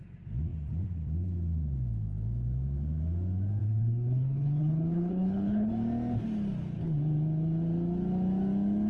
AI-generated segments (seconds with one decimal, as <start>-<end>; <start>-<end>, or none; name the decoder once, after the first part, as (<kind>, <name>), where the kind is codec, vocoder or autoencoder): 3.6-5.7 (codec, HILCodec)

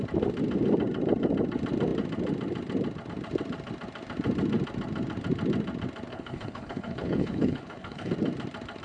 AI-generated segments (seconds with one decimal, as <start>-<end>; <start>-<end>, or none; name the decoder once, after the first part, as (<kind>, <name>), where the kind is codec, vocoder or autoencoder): 6.1-8.1 (codec, HILCodec)